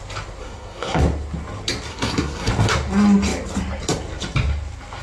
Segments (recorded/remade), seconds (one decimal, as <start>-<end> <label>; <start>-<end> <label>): 0.0-0.4 recorded; 0.4-1.0 remade; 1.0-1.9 recorded; 1.9-2.5 remade; 2.5-5.0 recorded